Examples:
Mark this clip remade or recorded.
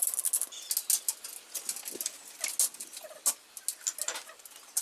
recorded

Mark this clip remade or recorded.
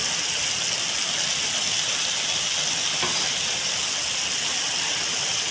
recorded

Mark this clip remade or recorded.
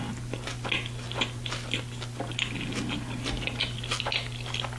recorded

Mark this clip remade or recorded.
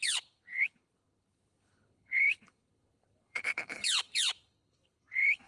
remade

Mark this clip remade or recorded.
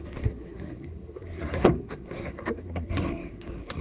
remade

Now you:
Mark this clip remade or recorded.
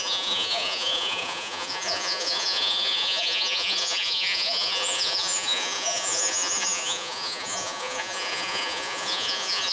remade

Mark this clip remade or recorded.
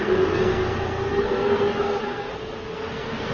remade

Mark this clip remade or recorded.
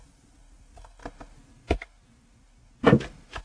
recorded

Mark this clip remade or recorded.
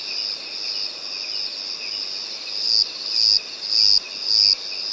recorded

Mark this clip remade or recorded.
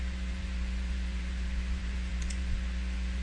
remade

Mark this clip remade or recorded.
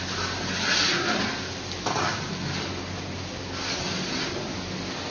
recorded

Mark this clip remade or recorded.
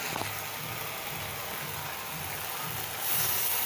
recorded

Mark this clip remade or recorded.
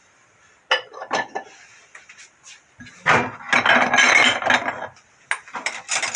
recorded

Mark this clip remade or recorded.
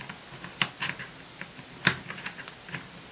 recorded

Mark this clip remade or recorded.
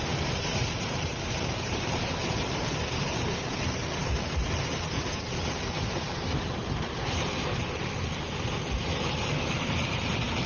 remade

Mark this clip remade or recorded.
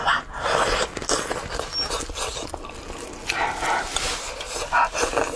recorded